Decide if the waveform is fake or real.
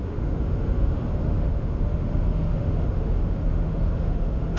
fake